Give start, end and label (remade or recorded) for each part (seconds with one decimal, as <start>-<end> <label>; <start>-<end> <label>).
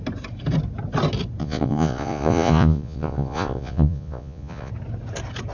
0.0-1.4 recorded; 1.4-4.7 remade; 4.7-5.5 recorded